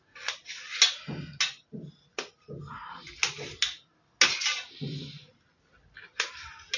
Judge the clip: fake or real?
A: real